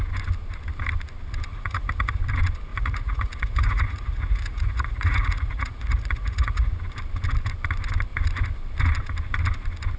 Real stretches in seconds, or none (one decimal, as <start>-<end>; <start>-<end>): 0.0-1.5; 2.2-2.7; 6.7-10.0